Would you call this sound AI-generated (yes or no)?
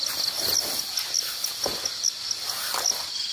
no